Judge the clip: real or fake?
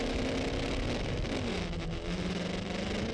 real